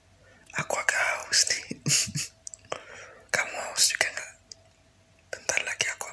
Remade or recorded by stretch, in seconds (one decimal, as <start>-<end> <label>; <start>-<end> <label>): 0.0-6.1 recorded